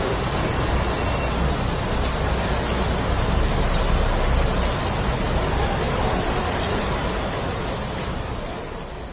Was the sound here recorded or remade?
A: recorded